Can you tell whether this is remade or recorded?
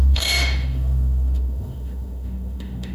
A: remade